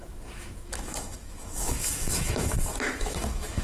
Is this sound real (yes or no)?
no